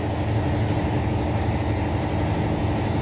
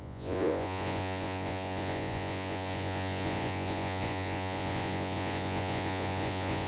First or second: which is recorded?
first